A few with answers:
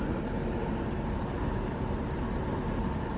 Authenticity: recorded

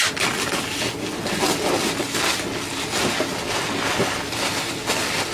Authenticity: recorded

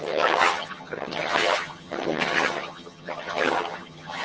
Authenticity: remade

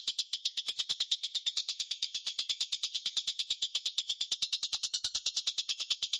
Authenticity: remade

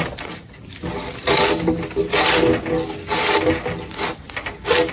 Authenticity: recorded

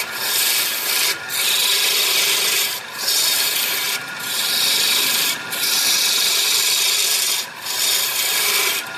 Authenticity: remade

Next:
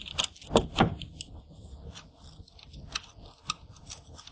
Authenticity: recorded